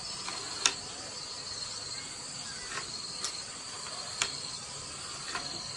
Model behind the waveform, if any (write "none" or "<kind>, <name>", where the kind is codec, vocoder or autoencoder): vocoder, BigVGAN v2